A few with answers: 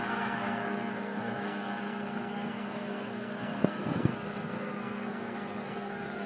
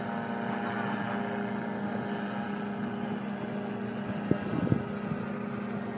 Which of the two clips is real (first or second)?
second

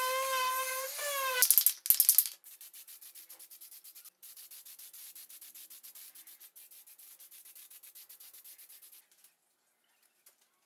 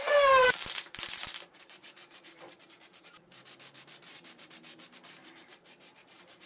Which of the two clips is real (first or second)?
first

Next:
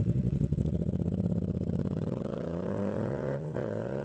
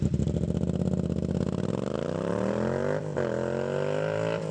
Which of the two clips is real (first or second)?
second